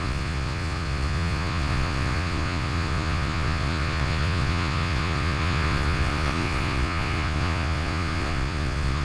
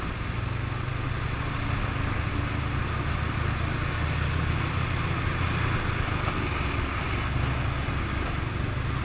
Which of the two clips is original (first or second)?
second